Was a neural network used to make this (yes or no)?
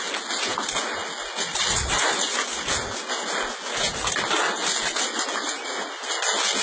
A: no